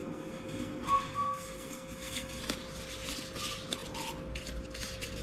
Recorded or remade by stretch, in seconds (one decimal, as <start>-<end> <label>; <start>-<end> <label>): 0.0-2.4 remade; 2.4-5.2 recorded